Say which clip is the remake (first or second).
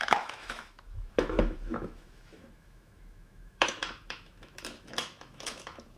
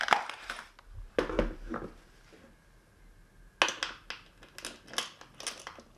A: first